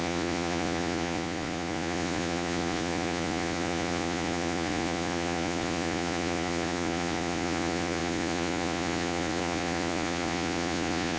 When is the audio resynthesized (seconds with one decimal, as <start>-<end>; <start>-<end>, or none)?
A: 0.0-11.2